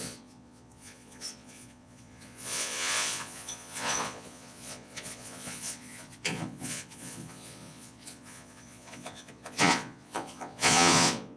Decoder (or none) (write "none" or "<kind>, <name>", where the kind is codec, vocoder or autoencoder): vocoder, Vocos